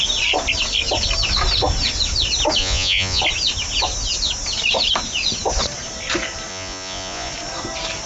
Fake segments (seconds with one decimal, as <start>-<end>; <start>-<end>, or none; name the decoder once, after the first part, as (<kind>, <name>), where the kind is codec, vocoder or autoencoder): 2.6-3.2 (vocoder, Vocos); 6.5-7.3